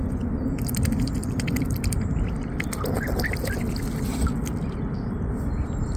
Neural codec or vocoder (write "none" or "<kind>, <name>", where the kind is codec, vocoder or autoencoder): none